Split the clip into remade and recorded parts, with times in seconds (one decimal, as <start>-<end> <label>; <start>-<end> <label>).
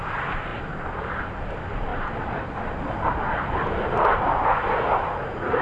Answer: 0.0-5.6 recorded